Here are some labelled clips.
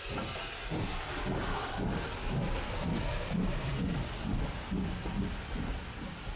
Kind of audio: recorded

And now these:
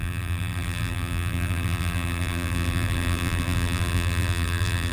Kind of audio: remade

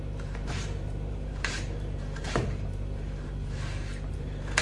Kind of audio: remade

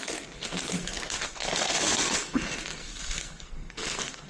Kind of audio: remade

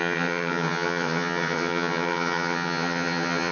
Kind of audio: remade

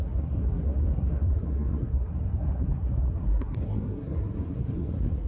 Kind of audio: remade